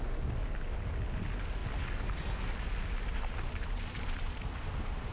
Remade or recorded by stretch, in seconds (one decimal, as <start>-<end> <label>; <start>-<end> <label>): 0.0-1.6 recorded; 1.6-4.6 remade; 4.6-5.1 recorded